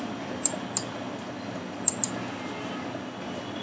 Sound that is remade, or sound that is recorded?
recorded